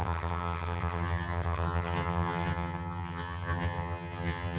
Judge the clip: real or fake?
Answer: fake